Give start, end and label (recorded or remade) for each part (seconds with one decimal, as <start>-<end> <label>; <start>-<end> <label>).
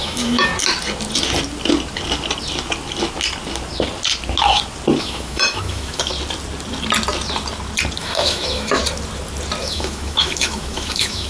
0.0-0.5 remade; 0.5-5.0 recorded; 5.0-6.1 remade; 6.1-8.0 recorded; 8.0-8.8 remade; 8.8-9.6 recorded; 9.6-11.3 remade